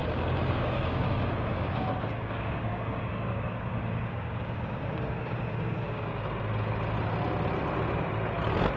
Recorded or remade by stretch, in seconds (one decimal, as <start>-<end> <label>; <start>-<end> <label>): 0.0-6.1 remade; 6.1-8.8 recorded